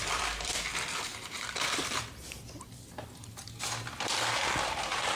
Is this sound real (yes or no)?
no